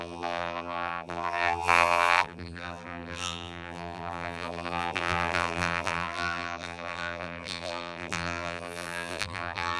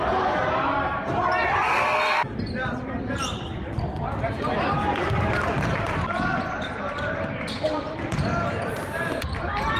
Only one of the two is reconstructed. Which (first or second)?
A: first